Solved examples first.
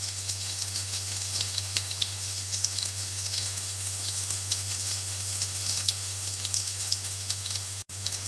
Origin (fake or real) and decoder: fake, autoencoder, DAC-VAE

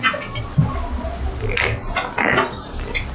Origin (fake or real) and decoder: real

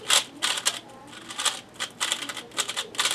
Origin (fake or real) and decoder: real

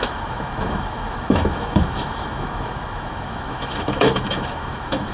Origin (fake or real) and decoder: fake, autoencoder, DAC-VAE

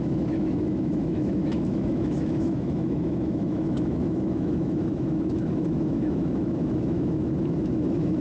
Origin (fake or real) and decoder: fake, autoencoder, DAC-VAE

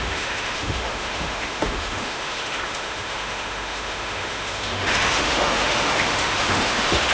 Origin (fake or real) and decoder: fake, autoencoder, DAC-VAE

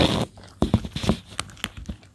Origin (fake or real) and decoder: real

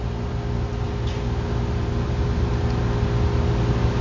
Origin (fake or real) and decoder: real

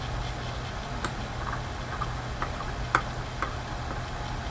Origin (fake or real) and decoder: real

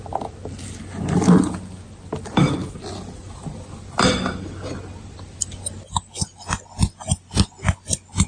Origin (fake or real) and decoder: real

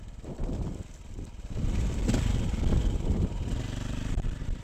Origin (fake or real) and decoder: real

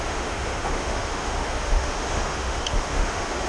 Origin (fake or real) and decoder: fake, autoencoder, DAC-VAE